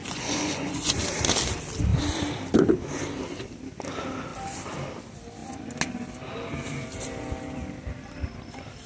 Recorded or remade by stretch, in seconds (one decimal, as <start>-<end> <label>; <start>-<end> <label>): 0.0-1.0 remade; 1.0-8.9 recorded